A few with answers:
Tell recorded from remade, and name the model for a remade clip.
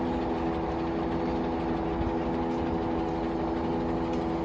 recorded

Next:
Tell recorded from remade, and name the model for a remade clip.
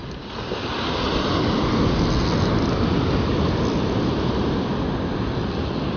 recorded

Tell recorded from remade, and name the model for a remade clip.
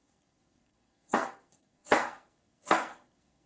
remade, codec, SNAC